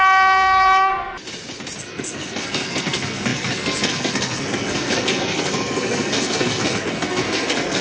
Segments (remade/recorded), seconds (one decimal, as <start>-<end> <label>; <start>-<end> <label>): 0.0-0.9 remade; 0.9-1.8 recorded; 1.8-7.8 remade